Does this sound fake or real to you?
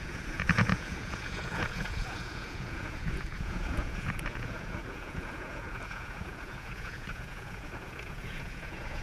fake